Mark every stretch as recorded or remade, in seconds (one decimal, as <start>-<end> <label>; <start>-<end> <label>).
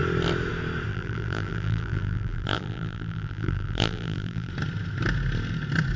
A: 0.0-0.9 recorded; 0.9-4.5 remade; 4.5-6.0 recorded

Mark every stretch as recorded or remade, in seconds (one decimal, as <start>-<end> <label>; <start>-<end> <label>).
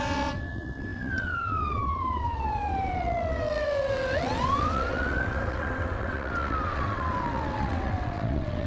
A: 0.0-8.7 remade